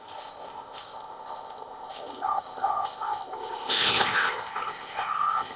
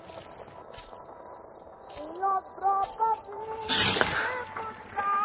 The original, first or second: second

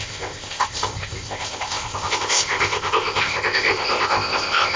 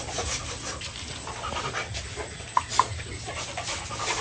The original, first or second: second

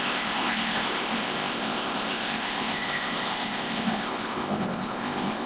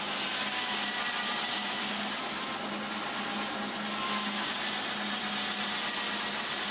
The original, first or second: second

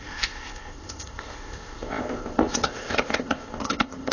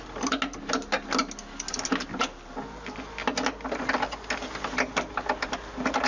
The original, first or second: second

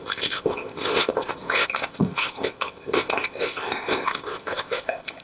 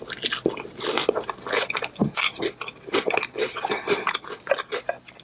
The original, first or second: second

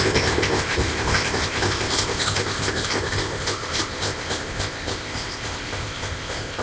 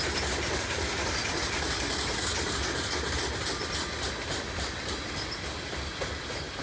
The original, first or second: second